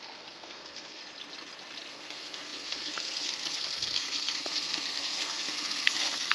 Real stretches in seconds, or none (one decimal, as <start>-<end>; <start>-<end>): 1.0-1.9